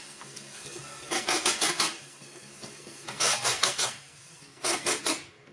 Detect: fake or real fake